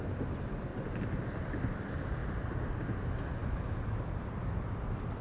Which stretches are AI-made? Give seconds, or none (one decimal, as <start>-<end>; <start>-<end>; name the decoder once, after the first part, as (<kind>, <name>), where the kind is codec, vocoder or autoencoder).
none